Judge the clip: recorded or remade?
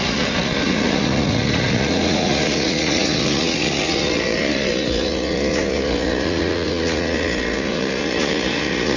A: remade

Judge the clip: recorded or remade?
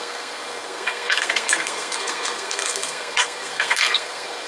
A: remade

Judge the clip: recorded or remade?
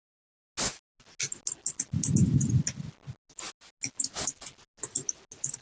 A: recorded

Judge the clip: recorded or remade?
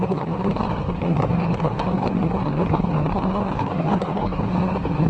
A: remade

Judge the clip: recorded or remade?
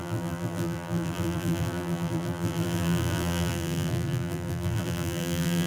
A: remade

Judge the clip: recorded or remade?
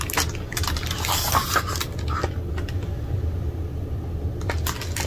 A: recorded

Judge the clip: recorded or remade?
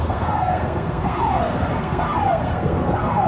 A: remade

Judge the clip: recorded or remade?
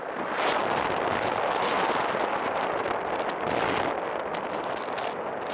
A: recorded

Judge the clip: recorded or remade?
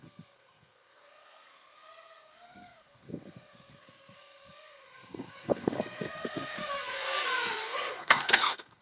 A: remade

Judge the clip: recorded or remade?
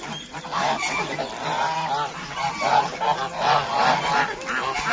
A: recorded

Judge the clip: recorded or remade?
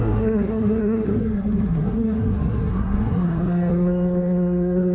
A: remade